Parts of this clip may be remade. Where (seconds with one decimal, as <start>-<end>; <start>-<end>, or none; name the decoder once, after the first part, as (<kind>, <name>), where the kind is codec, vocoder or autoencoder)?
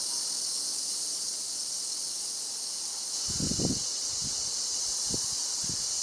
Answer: 0.7-1.6 (vocoder, BigVGAN v2); 2.1-6.0